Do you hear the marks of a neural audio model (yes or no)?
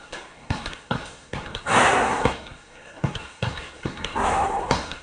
yes